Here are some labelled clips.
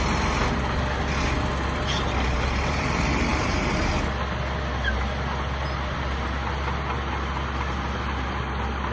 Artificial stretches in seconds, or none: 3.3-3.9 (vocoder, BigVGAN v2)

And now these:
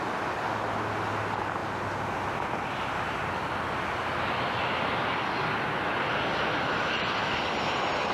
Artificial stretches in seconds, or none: none

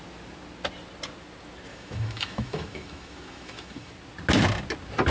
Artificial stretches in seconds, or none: 1.7-3.9 (autoencoder, DAC-VAE)

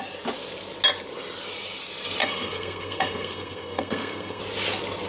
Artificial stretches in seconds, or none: 2.2-4.4 (codec, SNAC)